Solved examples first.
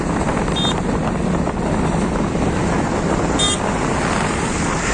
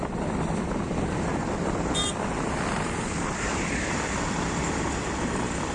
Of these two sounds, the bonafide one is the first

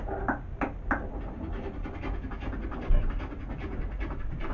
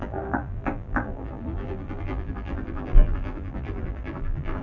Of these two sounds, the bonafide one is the first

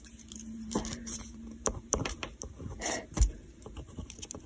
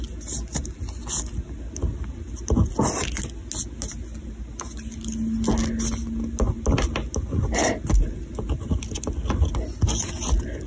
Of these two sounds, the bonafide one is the second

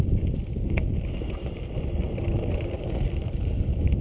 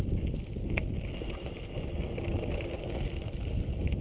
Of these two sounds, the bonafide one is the second